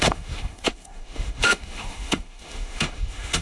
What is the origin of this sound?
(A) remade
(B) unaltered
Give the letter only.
A